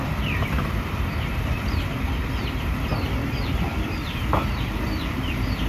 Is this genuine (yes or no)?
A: no